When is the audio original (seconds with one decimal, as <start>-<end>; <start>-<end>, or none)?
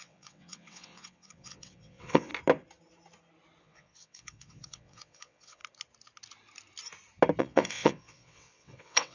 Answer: 2.3-3.6; 5.6-7.4